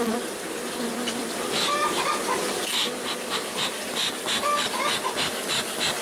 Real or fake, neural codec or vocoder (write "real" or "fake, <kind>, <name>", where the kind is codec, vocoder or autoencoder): real